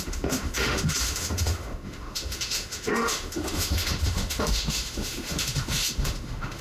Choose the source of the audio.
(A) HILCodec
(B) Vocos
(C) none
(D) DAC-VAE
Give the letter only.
D